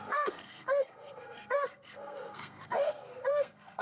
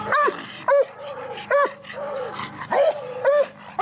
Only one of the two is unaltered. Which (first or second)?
second